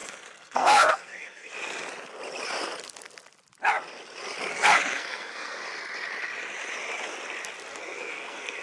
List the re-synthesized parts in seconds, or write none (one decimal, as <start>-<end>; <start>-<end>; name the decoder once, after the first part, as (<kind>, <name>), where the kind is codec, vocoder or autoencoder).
0.0-1.5 (codec, SNAC); 4.5-5.6; 7.7-8.6